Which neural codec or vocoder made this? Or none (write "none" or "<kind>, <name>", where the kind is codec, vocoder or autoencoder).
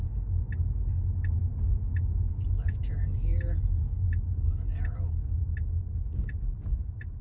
none